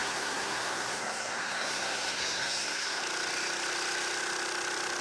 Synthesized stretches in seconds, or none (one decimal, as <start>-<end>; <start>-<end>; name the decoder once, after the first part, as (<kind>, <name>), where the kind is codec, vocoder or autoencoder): 0.0-3.0 (codec, SNAC)